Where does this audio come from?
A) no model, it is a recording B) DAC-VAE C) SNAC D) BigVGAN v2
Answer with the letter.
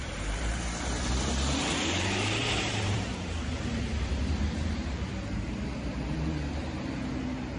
D